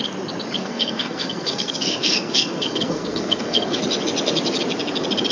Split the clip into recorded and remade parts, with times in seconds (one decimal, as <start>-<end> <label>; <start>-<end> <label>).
0.0-0.6 recorded; 0.6-3.8 remade; 3.8-5.3 recorded